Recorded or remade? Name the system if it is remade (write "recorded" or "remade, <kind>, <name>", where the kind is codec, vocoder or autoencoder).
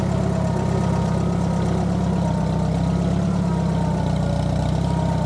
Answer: recorded